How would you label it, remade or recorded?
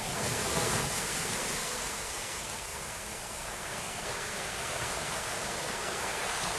remade